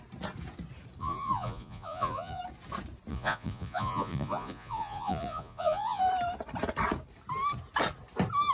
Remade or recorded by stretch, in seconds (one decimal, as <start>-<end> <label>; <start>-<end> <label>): 0.0-1.0 recorded; 1.0-2.4 remade; 2.4-3.1 recorded; 3.1-6.0 remade; 6.0-8.5 recorded